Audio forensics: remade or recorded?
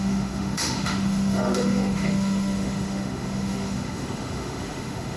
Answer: remade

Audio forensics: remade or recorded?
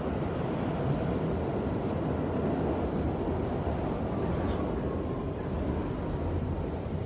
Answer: recorded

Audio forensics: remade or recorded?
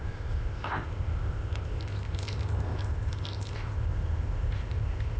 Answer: remade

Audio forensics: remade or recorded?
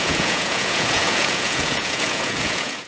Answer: remade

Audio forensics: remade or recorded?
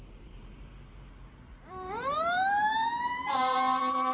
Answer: remade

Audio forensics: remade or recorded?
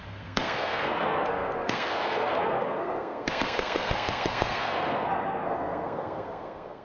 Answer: remade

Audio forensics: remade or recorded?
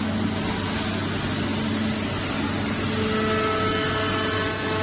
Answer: recorded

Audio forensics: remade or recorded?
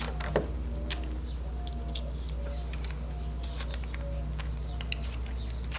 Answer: recorded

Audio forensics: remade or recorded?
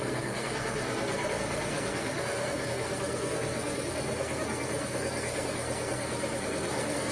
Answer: remade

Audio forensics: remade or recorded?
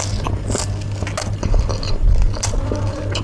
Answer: recorded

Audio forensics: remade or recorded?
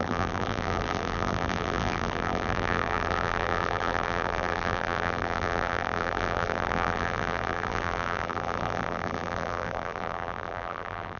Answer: remade